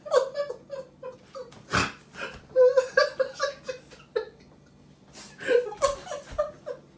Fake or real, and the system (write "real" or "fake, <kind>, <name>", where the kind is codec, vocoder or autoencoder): real